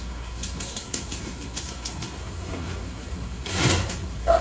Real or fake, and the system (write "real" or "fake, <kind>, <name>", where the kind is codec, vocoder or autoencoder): fake, codec, SNAC